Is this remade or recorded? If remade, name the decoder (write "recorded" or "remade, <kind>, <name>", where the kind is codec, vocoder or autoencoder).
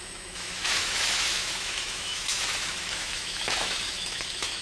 remade, autoencoder, DAC-VAE